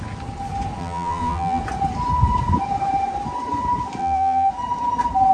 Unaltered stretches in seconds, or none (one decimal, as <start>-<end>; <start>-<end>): 0.0-0.8; 1.6-4.0; 4.5-5.3